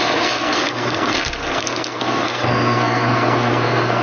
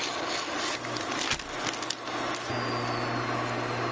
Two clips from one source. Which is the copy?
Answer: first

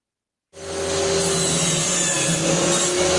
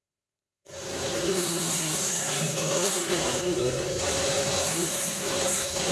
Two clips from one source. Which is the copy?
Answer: second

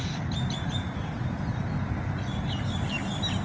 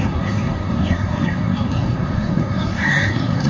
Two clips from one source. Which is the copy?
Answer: second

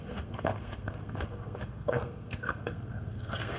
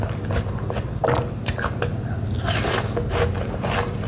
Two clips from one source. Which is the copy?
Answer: first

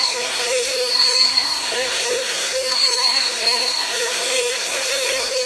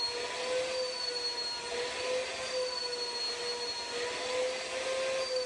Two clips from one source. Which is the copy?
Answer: first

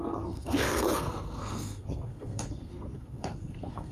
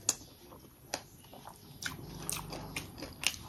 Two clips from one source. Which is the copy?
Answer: first